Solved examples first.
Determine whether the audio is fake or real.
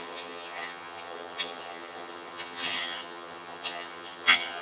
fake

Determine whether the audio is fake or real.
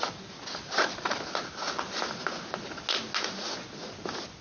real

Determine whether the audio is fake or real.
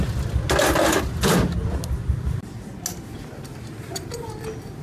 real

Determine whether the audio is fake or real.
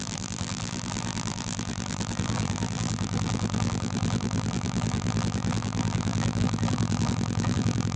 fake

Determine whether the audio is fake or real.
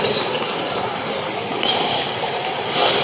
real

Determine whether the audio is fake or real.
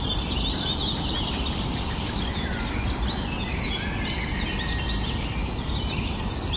real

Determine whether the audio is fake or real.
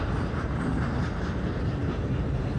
real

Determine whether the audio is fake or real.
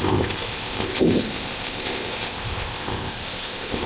fake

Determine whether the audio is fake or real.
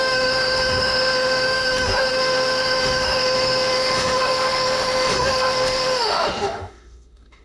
fake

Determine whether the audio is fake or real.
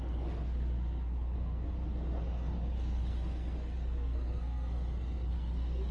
fake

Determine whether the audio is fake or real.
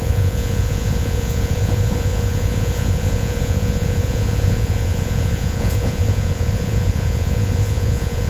fake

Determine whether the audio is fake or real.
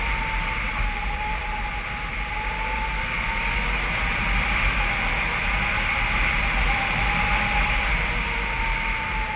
real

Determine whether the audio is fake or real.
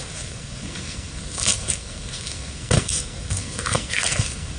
fake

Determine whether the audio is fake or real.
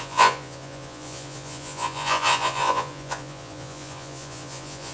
fake